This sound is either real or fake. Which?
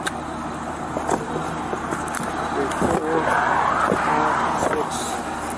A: real